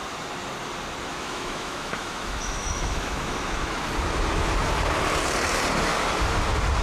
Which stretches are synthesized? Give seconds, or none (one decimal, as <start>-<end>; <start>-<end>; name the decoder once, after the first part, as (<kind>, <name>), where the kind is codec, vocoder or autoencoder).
1.1-3.8 (autoencoder, DAC-VAE)